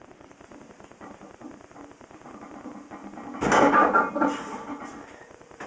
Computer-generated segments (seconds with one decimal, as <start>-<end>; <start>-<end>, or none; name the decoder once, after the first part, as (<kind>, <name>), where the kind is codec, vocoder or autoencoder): none